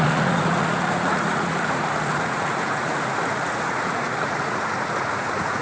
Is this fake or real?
fake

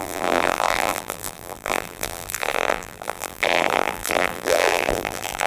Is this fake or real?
fake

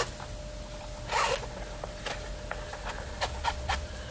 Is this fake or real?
real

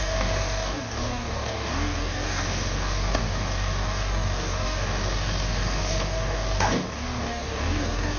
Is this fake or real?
fake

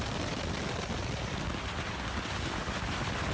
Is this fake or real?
real